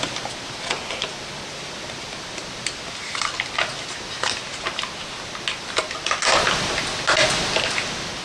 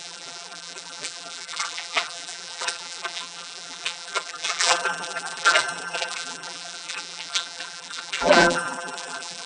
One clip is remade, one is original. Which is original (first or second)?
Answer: first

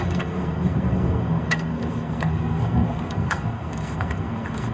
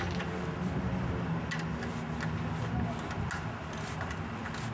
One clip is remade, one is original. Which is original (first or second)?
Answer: second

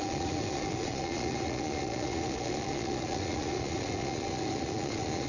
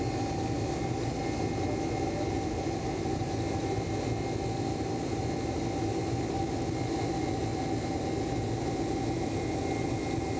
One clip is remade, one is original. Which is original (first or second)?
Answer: second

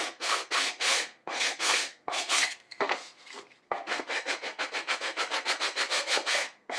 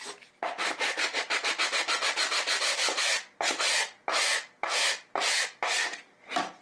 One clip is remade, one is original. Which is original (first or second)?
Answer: second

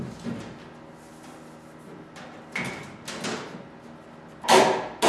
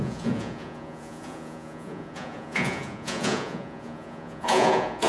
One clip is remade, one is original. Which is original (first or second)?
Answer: first